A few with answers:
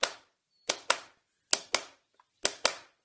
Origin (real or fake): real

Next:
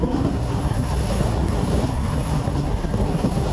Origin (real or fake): fake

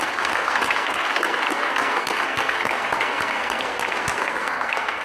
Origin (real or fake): fake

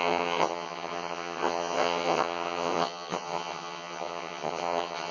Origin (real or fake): fake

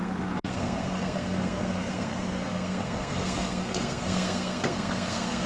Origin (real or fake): fake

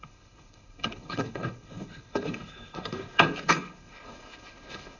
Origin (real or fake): fake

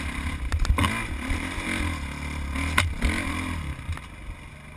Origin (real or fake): real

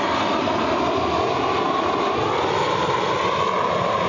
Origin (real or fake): real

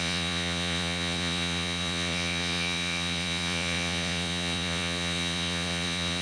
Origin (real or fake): fake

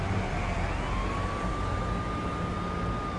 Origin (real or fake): real